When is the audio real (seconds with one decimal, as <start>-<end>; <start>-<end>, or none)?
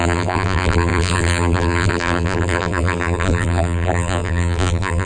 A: none